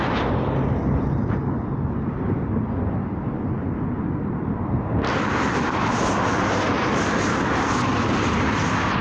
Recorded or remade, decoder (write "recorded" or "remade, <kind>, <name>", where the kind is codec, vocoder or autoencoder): recorded